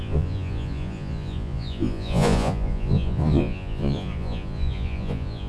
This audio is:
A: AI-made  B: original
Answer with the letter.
A